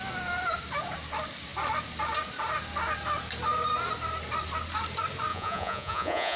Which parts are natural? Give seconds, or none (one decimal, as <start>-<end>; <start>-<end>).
0.0-5.3